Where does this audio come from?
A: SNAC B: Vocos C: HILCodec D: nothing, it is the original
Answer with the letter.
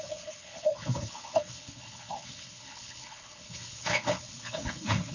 C